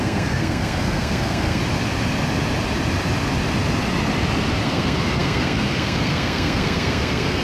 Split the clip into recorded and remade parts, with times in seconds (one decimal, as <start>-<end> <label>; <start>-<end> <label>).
0.0-1.6 remade; 1.6-4.6 recorded; 4.6-7.4 remade